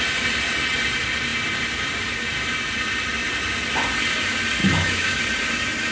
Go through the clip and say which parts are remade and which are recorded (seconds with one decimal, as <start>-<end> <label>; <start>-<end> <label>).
0.0-4.6 recorded; 4.6-5.2 remade; 5.2-5.9 recorded